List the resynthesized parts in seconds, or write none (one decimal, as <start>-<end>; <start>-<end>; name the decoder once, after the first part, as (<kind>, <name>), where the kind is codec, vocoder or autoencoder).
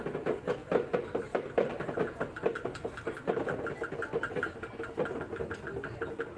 none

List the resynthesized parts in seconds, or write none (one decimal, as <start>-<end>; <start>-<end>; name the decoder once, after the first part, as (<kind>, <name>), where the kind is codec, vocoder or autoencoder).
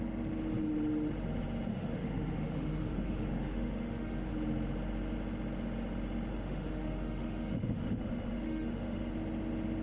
1.7-4.3 (autoencoder, DAC-VAE); 6.3-9.1